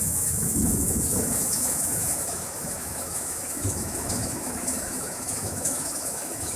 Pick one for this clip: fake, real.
fake